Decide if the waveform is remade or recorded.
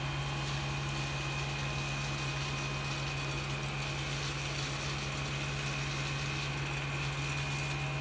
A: recorded